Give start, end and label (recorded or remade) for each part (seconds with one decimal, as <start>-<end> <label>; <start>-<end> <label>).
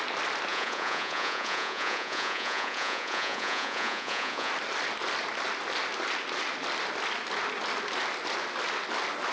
0.0-0.5 recorded; 0.5-4.5 remade; 4.5-9.3 recorded